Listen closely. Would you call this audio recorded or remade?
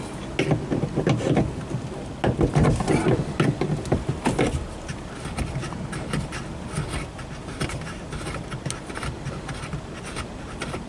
recorded